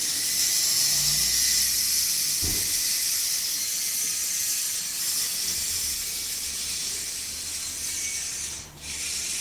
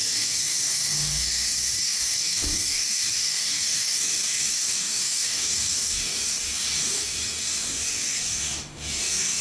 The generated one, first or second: second